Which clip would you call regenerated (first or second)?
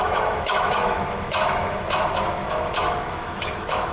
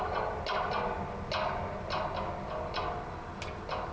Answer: first